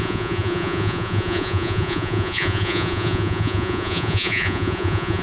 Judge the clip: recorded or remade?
remade